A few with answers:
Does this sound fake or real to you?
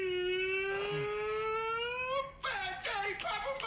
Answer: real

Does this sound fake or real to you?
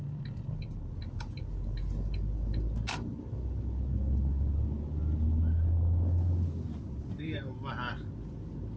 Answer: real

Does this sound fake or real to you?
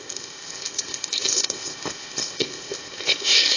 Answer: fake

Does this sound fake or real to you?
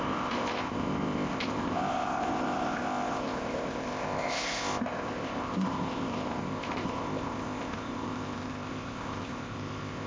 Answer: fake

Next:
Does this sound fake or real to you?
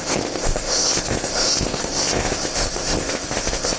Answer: fake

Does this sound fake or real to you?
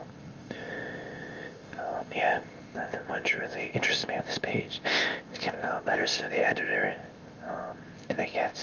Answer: fake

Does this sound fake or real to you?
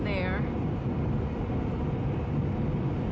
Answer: real